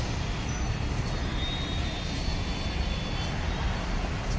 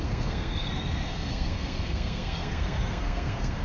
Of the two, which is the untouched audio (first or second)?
first